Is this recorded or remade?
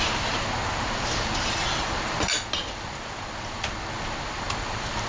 recorded